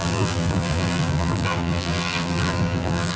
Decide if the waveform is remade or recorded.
remade